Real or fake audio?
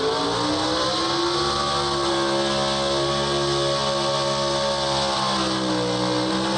real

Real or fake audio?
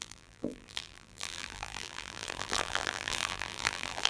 fake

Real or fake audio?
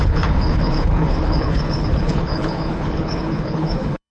fake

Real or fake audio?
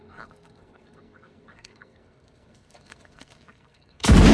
fake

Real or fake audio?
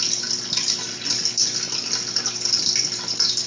real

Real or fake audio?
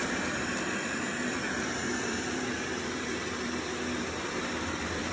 fake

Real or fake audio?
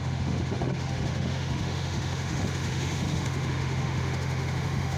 fake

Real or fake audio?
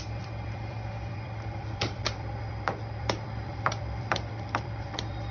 fake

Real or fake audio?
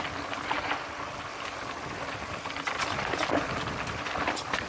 real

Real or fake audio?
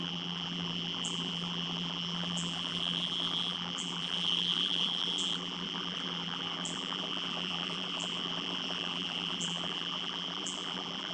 fake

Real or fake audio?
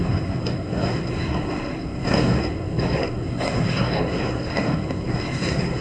fake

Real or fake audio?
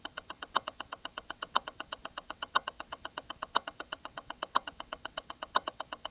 fake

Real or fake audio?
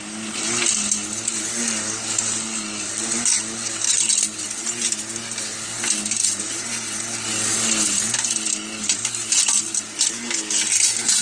real